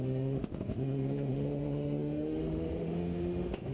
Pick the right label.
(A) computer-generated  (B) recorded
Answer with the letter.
A